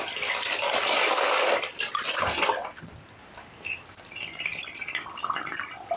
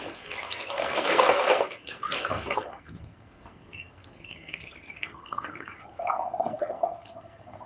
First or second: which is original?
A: first